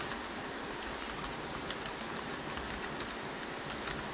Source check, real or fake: real